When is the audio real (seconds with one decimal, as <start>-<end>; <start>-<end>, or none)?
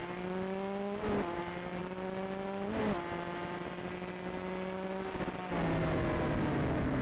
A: 0.0-7.0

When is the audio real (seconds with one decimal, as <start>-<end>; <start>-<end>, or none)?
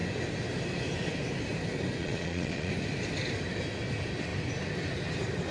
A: 0.0-2.0; 2.7-5.5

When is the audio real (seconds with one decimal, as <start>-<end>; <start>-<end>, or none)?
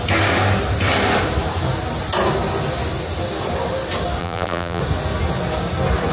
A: 0.0-4.2; 4.8-6.1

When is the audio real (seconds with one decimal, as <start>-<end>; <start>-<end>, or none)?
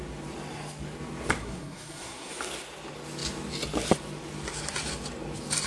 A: 0.0-1.4; 2.3-5.7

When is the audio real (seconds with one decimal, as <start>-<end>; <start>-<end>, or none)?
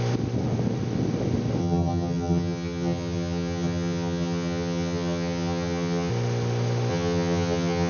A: 0.0-1.6; 6.1-6.9